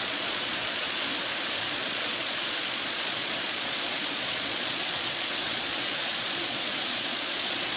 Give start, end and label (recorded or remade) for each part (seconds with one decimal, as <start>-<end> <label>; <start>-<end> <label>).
0.0-1.1 remade; 1.1-1.6 recorded; 1.6-7.8 remade